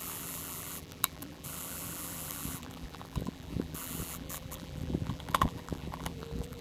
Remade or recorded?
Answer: remade